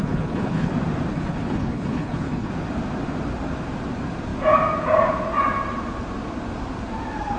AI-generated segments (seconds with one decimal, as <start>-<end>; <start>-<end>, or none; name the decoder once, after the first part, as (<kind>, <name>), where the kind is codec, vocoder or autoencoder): 0.0-0.7 (codec, HILCodec); 1.1-2.5